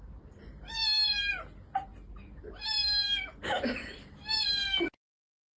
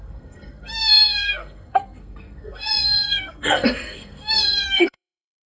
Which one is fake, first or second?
second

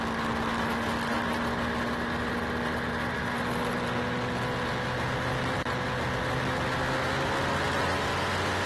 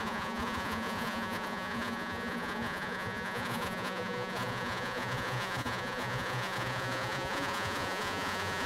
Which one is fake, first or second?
second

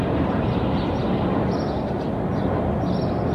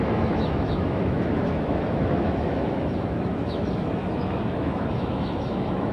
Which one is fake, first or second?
second